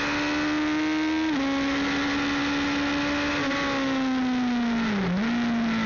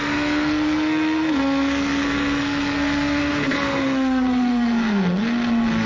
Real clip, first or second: first